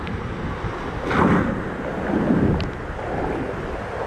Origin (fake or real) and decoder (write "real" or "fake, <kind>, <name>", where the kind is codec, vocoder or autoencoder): real